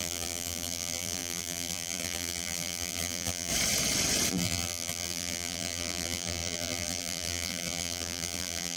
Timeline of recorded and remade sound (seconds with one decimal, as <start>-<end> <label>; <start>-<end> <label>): 0.0-3.5 remade; 3.5-4.3 recorded; 4.3-8.8 remade